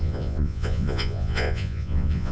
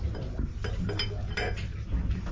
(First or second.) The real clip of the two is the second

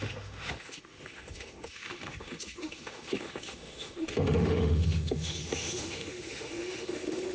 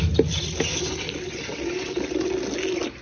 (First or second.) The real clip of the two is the second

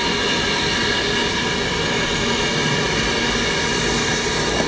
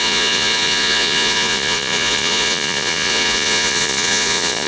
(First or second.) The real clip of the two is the first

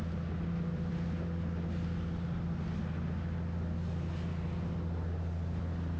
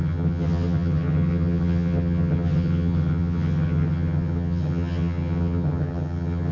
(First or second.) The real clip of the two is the first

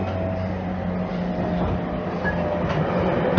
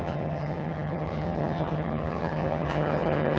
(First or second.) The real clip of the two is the first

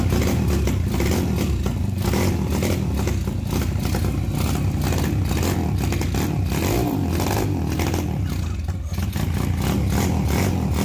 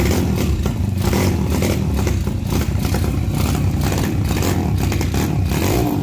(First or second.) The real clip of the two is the first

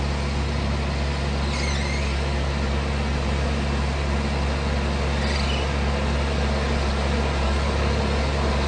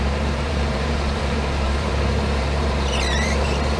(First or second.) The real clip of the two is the first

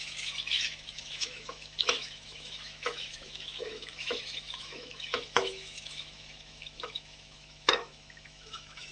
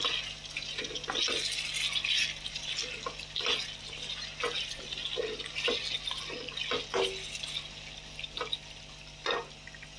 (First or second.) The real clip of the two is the second